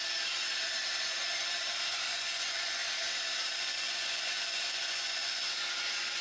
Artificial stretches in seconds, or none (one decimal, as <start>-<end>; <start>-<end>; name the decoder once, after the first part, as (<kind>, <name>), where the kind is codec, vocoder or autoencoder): 2.1-2.8 (vocoder, Vocos); 3.5-6.2